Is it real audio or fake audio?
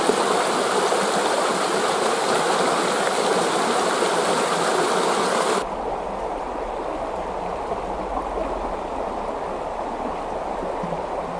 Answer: real